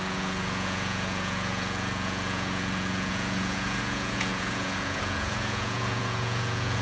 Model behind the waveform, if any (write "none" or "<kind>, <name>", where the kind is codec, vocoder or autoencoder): vocoder, Vocos